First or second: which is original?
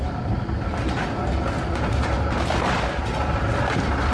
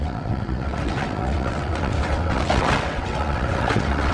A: first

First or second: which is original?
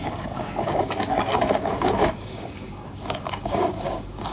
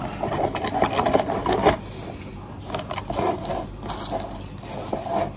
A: second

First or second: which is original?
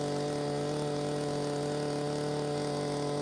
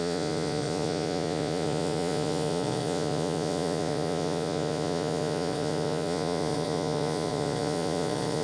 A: first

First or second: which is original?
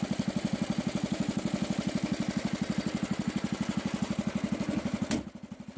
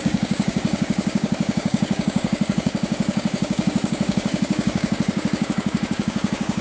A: first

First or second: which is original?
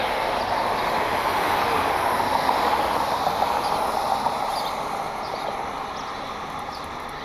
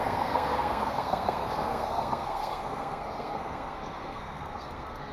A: first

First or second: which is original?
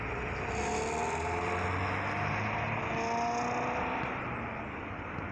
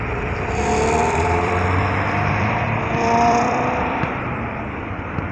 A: first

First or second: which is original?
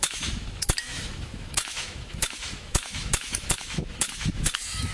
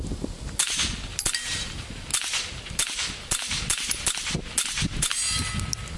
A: second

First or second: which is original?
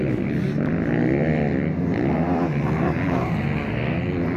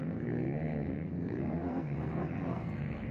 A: first